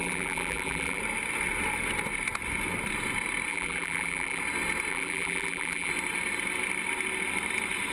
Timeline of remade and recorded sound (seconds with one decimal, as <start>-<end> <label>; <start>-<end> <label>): 0.0-1.0 remade; 1.0-3.5 recorded; 3.5-4.4 remade; 4.4-4.9 recorded; 4.9-5.9 remade; 5.9-7.9 recorded